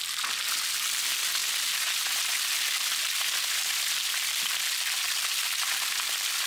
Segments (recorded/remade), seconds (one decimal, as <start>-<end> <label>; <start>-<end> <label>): 0.0-6.5 recorded